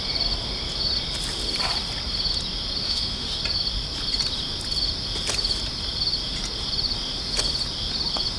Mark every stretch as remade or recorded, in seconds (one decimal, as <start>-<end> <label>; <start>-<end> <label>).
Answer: 0.0-2.8 recorded; 2.8-3.4 remade; 3.4-8.4 recorded